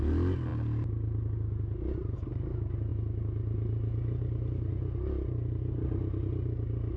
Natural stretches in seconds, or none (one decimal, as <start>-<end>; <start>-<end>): 0.0-7.0